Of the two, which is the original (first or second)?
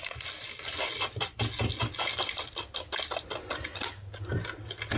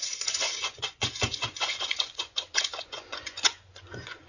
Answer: first